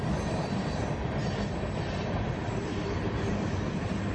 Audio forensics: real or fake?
real